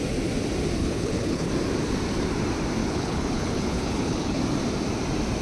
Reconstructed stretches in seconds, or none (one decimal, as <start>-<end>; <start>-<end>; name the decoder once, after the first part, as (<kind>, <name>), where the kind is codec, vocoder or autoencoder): 0.8-1.5 (codec, HILCodec); 2.8-4.4